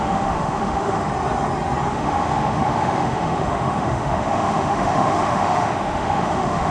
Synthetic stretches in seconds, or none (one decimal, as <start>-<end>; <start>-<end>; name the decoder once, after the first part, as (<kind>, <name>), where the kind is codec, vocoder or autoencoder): 0.0-1.1 (autoencoder, DAC-VAE); 1.9-6.7